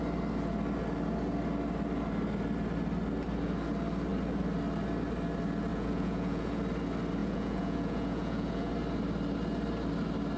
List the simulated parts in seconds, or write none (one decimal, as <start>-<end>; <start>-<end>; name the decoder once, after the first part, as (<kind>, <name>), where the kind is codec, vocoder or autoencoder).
5.7-6.6 (vocoder, Vocos); 7.2-8.7